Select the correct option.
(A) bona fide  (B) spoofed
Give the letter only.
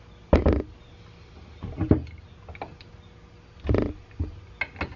A